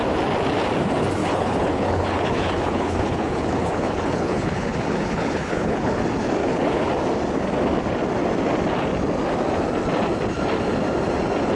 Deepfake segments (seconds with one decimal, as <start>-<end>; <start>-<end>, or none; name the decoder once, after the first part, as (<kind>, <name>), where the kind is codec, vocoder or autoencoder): 1.2-6.0 (codec, HILCodec); 6.4-6.9